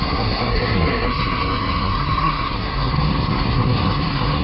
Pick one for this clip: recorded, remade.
remade